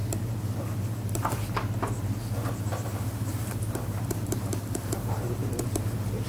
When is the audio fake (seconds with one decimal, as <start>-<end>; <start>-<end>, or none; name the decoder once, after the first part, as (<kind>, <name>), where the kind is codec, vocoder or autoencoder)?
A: 2.4-6.3 (vocoder, BigVGAN v2)